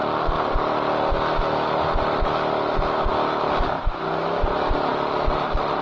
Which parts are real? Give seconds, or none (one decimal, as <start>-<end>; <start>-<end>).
0.0-5.8